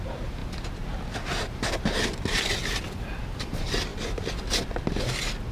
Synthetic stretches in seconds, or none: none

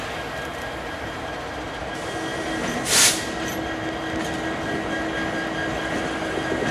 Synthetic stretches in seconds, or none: 0.5-1.8 (vocoder, BigVGAN v2)